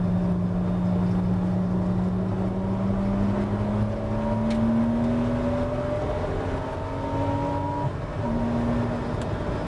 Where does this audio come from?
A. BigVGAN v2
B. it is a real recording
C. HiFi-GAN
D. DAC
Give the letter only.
B